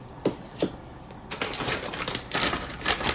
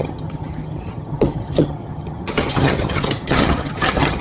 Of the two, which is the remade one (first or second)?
second